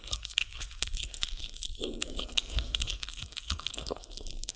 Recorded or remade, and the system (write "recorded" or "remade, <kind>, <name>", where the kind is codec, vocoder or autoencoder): remade, codec, SNAC